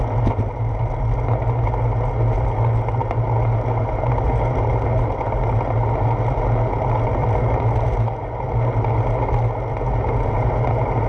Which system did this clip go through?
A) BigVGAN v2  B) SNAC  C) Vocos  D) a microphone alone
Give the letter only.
D